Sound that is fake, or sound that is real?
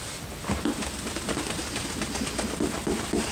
real